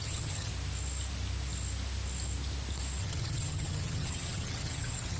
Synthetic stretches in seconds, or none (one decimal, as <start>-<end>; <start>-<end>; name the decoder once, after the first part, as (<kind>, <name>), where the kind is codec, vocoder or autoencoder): 0.0-0.5 (vocoder, HiFi-GAN); 3.0-5.2